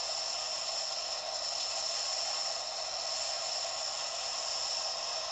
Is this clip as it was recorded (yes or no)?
yes